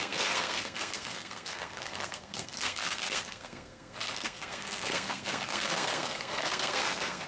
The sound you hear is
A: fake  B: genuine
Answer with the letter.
A